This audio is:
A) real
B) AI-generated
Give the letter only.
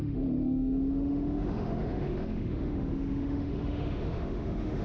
B